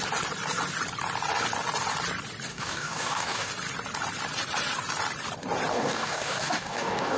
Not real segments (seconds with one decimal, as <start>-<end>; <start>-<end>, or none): 2.5-3.5; 5.7-7.2